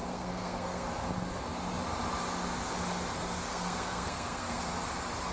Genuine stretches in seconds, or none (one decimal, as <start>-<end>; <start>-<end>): 0.9-3.5; 4.6-5.3